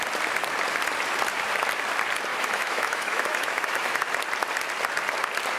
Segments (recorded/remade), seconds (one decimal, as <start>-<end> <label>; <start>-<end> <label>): 0.0-2.3 recorded; 2.3-4.0 remade; 4.0-5.6 recorded